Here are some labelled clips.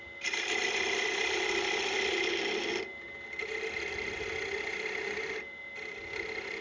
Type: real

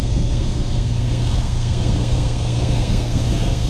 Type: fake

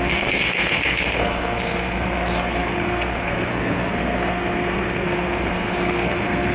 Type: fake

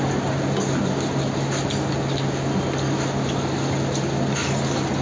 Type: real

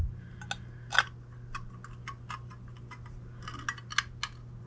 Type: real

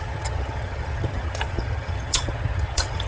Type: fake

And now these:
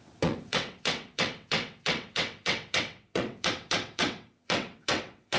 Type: fake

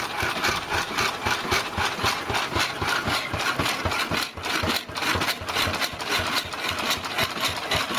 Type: real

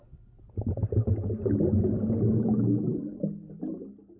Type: real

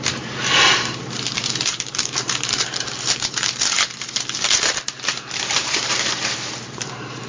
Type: fake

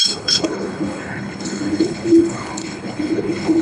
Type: fake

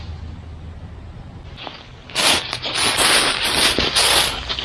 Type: real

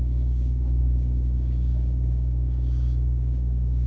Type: fake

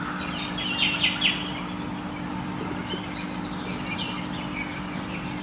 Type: real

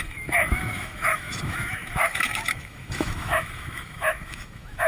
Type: fake